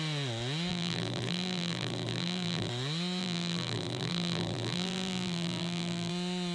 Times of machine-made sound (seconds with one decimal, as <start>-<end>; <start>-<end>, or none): 0.7-2.7; 3.2-6.1